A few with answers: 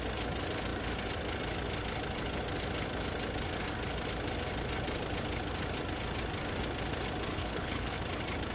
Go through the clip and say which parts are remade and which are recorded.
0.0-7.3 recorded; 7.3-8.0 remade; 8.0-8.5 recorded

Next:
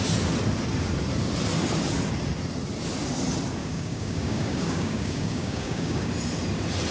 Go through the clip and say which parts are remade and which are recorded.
0.0-3.6 recorded; 3.6-6.1 remade; 6.1-6.9 recorded

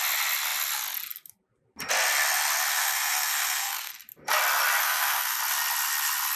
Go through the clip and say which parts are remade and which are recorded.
0.0-2.7 recorded; 2.7-3.9 remade; 3.9-4.8 recorded; 4.8-5.4 remade; 5.4-6.4 recorded

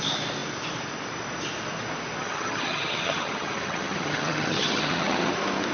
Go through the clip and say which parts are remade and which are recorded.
0.0-2.2 recorded; 2.2-5.3 remade; 5.3-5.7 recorded